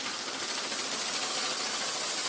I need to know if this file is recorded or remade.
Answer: recorded